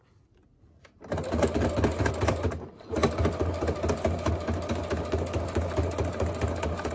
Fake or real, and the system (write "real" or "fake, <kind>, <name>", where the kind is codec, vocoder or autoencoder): real